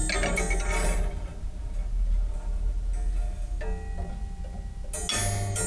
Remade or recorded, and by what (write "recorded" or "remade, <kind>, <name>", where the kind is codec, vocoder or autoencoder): recorded